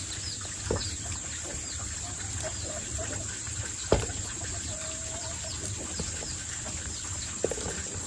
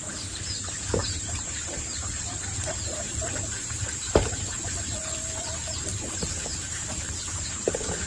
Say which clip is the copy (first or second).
second